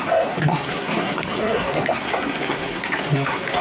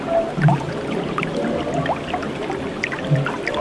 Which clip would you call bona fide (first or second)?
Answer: second